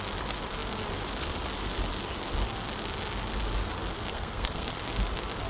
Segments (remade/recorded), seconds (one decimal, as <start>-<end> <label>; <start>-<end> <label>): 0.0-4.1 recorded; 4.1-4.8 remade; 4.8-5.5 recorded